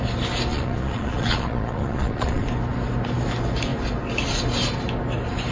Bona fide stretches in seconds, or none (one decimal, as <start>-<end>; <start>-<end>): 0.0-0.5; 2.5-5.5